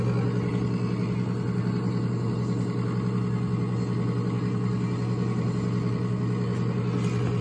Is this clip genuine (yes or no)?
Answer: yes